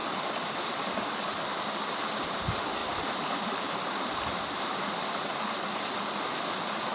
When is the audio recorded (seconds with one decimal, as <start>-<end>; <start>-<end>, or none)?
1.3-2.8; 3.5-6.9